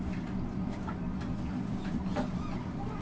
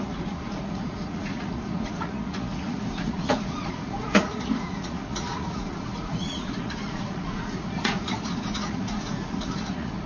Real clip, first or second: first